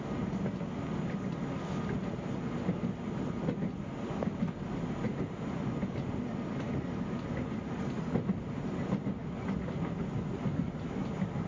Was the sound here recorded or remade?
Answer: recorded